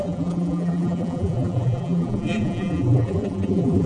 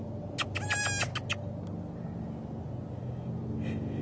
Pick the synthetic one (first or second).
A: first